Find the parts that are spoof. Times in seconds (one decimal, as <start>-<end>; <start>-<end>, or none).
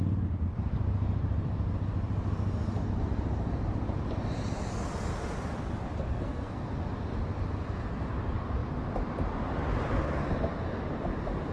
6.1-6.7